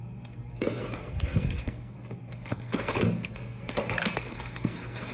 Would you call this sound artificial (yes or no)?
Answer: yes